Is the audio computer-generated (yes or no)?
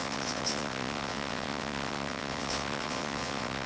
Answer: yes